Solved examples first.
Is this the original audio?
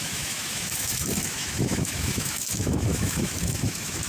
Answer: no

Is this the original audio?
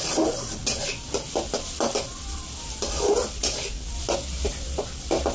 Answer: yes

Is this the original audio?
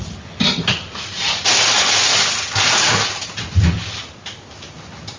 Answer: yes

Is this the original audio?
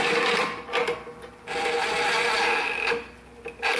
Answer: yes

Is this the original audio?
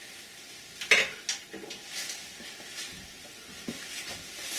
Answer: yes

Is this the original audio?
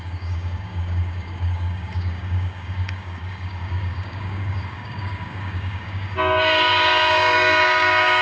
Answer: no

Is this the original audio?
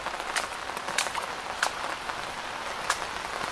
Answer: yes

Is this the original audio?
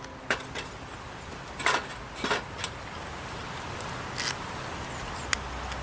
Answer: yes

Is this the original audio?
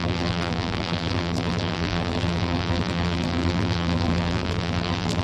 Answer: no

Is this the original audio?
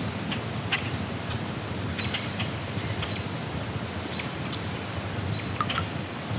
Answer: no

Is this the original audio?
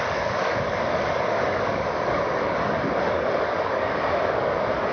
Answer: no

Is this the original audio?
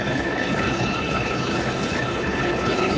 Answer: no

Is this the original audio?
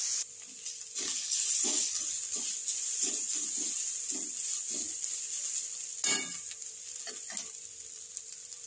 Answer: yes